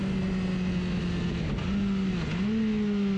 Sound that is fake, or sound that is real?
real